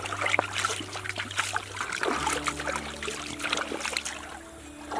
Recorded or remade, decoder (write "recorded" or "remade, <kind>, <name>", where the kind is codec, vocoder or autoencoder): recorded